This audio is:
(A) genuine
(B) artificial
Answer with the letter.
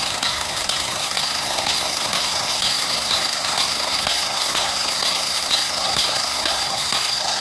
B